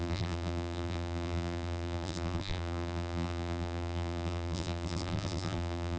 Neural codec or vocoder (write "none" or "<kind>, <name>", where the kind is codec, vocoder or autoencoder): vocoder, BigVGAN v2